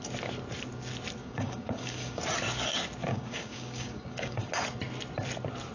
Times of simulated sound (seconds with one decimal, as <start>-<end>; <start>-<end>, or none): 1.2-2.2; 3.1-4.5